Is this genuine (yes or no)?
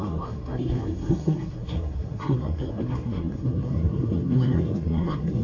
no